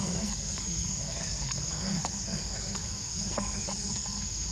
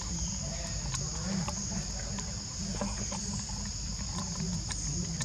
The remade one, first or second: first